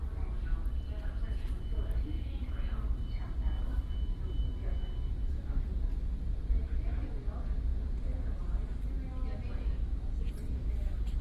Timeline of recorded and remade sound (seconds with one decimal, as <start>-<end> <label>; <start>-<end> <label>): 0.0-11.2 recorded